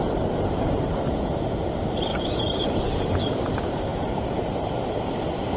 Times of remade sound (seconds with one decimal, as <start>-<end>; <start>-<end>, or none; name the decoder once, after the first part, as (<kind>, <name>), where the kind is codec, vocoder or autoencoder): 0.0-2.1 (vocoder, BigVGAN v2); 3.3-5.6